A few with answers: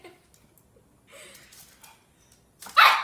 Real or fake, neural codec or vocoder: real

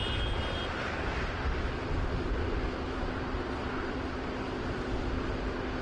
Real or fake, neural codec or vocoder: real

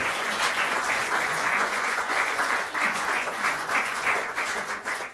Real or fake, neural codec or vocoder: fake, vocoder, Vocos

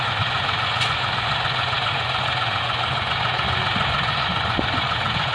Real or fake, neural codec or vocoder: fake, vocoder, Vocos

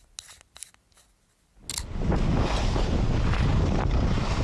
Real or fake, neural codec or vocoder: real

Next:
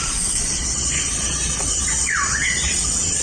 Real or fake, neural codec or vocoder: fake, vocoder, Vocos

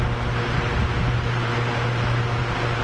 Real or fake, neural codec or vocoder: real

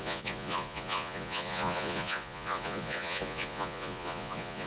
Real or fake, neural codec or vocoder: fake, vocoder, Vocos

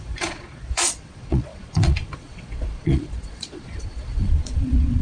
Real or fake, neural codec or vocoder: fake, vocoder, Vocos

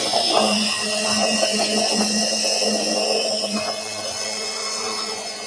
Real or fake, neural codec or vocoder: fake, vocoder, Vocos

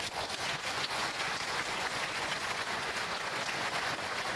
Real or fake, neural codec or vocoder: fake, vocoder, Vocos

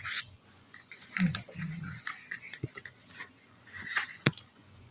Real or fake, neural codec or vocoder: fake, vocoder, Vocos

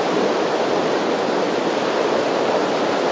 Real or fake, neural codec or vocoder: real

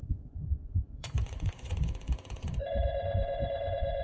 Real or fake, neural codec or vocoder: fake, vocoder, Vocos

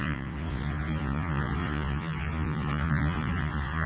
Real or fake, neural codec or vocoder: fake, vocoder, Vocos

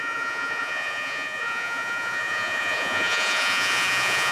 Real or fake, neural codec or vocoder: fake, vocoder, Vocos